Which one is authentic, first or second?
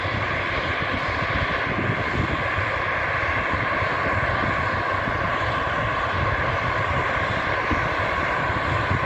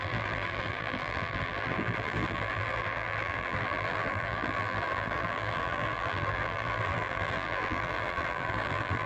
first